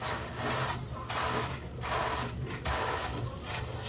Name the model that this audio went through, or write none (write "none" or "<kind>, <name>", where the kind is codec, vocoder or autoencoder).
none